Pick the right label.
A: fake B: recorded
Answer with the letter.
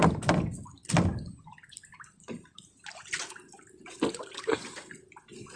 B